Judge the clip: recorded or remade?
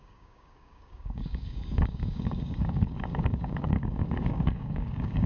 remade